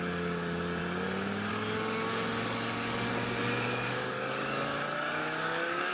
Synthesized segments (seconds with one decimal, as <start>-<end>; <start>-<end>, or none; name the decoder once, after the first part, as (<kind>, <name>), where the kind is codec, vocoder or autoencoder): 0.0-0.8 (codec, DAC); 1.5-5.9